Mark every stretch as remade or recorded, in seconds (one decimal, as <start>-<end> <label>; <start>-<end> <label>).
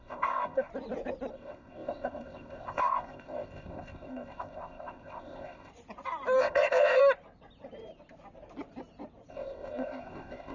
0.0-0.7 remade; 0.7-1.3 recorded; 1.3-5.7 remade; 5.7-6.4 recorded; 6.4-7.0 remade; 7.0-9.3 recorded; 9.3-10.5 remade